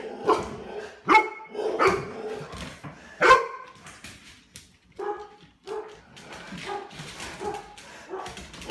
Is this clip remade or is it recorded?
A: recorded